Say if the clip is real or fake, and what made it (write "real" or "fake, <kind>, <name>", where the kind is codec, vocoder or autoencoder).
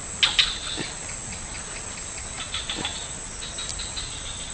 real